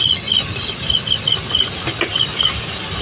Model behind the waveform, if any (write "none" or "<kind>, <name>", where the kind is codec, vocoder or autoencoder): none